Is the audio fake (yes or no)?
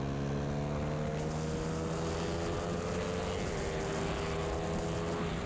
no